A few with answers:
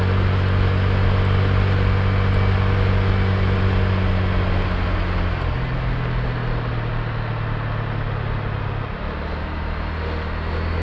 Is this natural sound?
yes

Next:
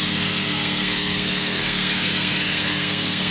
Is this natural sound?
no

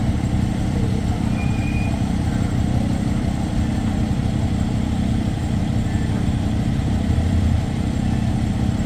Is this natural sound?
no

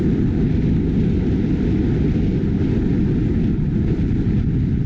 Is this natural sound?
yes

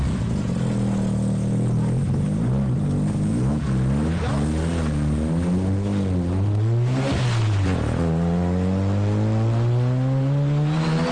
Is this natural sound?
yes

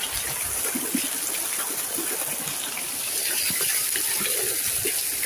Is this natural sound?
yes